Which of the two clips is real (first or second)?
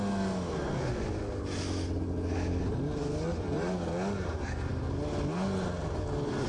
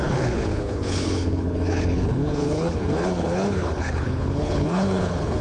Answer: first